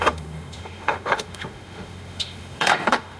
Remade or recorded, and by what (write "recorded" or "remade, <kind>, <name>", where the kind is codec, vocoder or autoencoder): remade, autoencoder, DAC-VAE